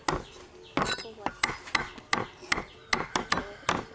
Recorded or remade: recorded